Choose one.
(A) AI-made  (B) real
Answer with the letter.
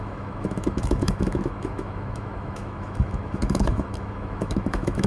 A